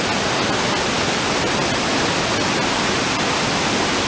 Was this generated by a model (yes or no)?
no